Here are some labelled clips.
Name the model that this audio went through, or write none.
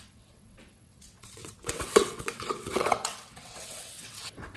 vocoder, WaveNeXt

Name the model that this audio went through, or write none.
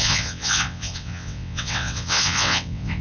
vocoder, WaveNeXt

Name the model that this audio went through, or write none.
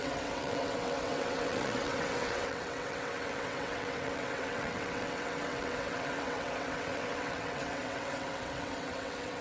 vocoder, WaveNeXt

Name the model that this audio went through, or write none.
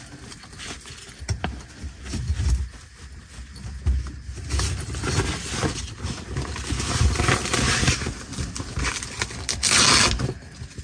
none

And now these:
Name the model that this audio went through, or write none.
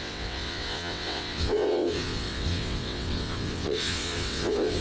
vocoder, WaveNeXt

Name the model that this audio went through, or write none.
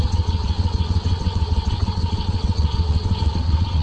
vocoder, WaveNeXt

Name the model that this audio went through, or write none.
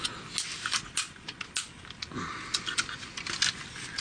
none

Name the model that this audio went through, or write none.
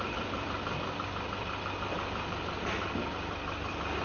none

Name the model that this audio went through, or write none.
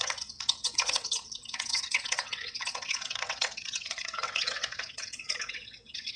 vocoder, WaveNeXt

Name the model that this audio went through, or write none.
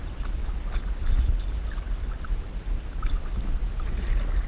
none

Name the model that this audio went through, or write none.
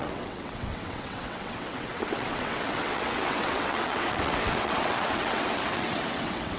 vocoder, WaveNeXt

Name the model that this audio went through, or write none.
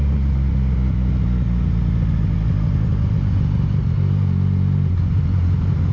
none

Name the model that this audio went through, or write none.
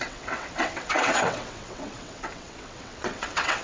vocoder, WaveNeXt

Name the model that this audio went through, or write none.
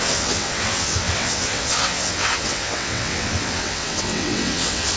vocoder, WaveNeXt